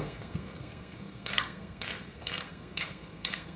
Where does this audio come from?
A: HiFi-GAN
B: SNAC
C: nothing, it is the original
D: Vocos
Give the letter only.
B